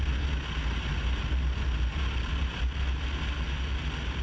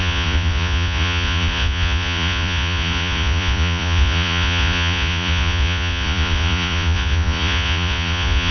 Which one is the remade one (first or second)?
second